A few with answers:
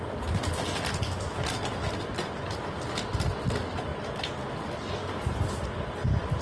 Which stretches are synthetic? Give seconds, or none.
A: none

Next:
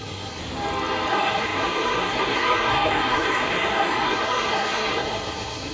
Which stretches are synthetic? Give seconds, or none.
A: 0.0-0.4 (codec, SNAC); 1.1-5.7